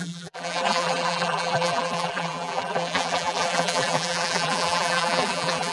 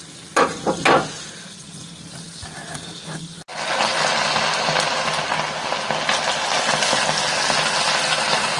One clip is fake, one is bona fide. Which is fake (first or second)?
first